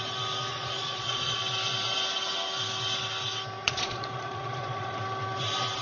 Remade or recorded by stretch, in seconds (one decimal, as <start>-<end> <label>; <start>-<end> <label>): 0.0-0.5 recorded; 0.5-1.4 remade; 1.4-3.6 recorded; 3.6-5.0 remade; 5.0-5.8 recorded